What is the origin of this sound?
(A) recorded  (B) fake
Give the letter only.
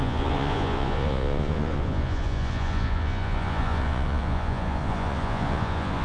B